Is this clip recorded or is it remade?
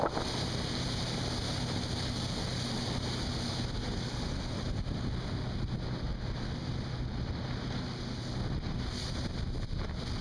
recorded